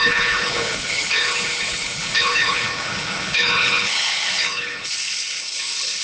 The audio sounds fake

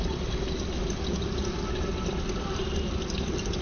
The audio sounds real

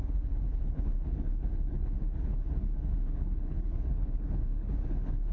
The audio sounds fake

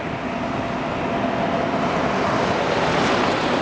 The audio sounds real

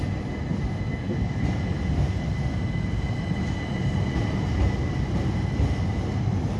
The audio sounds real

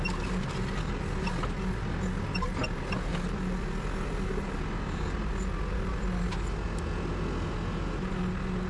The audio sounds real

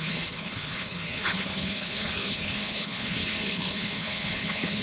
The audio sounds fake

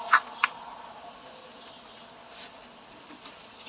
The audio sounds real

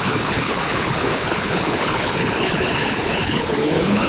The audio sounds fake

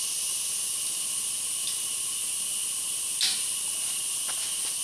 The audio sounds real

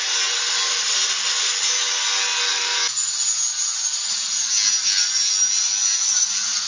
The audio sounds real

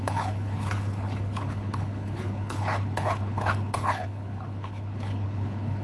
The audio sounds fake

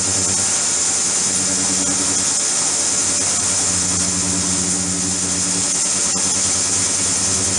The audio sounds real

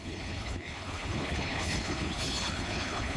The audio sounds fake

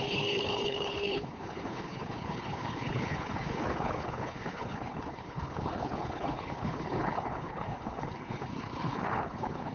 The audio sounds fake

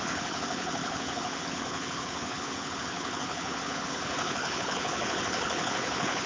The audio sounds fake